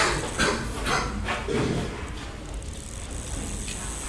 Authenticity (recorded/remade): recorded